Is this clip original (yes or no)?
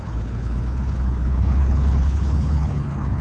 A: no